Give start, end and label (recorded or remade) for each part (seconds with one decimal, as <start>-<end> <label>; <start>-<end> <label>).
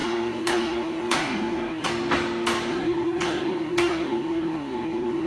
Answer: 0.0-1.9 remade; 1.9-2.7 recorded; 2.7-5.3 remade